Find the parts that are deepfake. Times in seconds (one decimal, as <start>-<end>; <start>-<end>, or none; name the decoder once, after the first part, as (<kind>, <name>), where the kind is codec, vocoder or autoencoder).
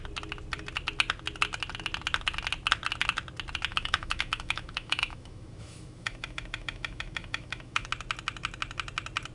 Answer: 3.7-7.9 (autoencoder, DAC-VAE)